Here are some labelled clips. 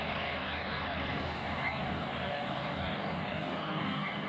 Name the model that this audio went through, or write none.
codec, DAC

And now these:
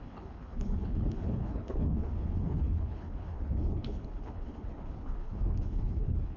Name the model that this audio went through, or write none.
codec, HILCodec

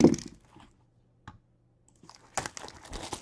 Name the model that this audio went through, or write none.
none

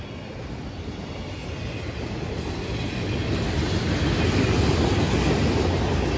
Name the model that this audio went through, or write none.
none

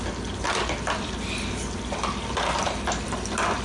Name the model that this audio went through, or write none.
none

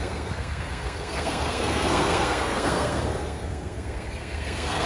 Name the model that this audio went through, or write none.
codec, SNAC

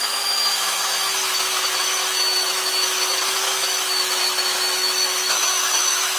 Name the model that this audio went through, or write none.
autoencoder, DAC-VAE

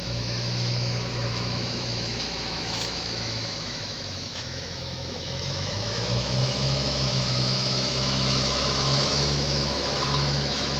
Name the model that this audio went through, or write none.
autoencoder, DAC-VAE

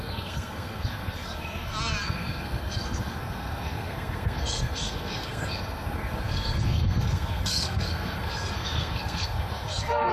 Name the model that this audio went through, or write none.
codec, SNAC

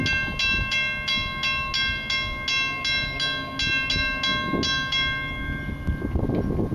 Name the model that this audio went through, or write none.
none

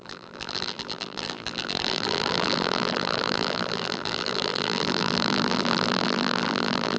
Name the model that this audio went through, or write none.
vocoder, BigVGAN v2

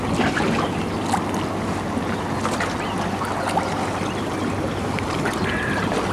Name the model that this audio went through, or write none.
none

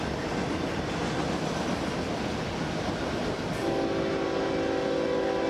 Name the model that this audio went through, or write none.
none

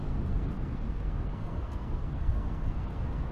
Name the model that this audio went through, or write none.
codec, SNAC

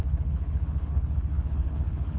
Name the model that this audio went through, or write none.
codec, HILCodec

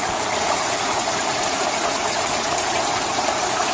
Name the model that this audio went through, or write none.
vocoder, Vocos